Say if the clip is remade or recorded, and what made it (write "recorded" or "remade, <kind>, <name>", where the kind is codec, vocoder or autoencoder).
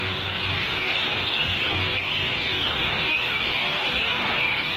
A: remade, codec, DAC